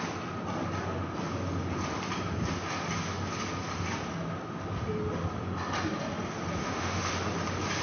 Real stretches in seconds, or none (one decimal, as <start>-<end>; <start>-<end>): 0.0-6.6; 7.1-7.8